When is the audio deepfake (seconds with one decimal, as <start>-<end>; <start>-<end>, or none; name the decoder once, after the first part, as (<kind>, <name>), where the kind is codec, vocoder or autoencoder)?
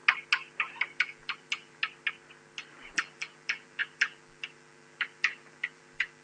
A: 1.0-1.8 (vocoder, BigVGAN v2); 2.7-6.2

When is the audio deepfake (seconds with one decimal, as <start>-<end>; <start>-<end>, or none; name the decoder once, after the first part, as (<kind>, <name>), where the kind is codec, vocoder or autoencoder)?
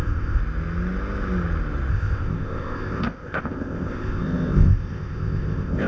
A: 0.0-0.4 (codec, ZipCodec); 1.9-5.9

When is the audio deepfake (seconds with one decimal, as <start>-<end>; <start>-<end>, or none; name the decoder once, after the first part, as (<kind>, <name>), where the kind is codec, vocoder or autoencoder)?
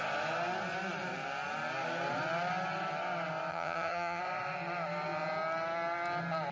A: 3.5-4.2 (vocoder, HiFi-GAN)